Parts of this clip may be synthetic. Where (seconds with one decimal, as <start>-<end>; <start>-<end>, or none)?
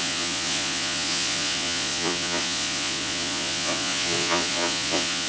0.0-5.3